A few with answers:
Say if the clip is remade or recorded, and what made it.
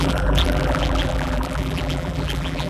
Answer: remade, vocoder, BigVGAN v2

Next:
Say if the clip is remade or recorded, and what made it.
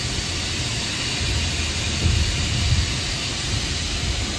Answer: remade, vocoder, BigVGAN v2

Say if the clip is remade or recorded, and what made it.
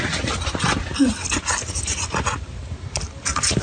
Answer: recorded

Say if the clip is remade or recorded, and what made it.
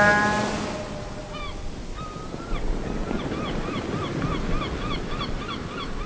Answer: recorded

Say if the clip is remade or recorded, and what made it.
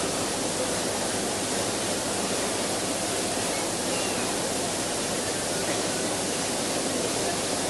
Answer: remade, vocoder, BigVGAN v2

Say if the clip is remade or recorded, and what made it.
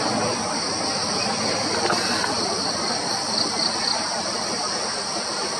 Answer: recorded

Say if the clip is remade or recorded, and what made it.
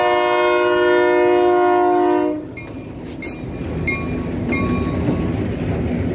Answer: recorded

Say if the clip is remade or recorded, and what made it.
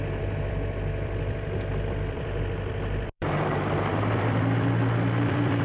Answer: remade, vocoder, BigVGAN v2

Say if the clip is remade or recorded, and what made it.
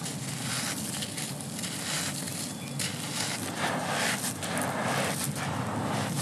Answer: recorded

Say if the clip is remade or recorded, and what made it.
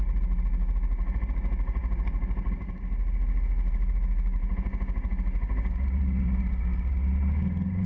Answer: recorded